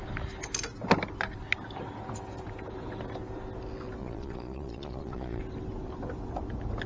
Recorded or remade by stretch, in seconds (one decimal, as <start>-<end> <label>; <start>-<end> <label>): 0.0-4.0 recorded; 4.0-5.4 remade; 5.4-6.9 recorded